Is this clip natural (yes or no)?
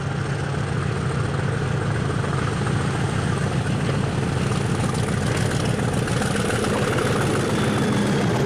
yes